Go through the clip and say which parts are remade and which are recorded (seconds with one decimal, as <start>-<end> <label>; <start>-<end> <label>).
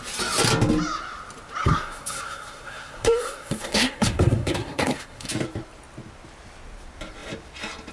0.0-1.6 recorded; 1.6-5.3 remade; 5.3-7.9 recorded